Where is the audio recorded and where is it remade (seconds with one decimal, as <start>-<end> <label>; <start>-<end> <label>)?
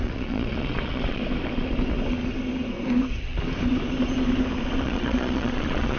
0.0-1.2 remade; 1.2-4.8 recorded; 4.8-6.0 remade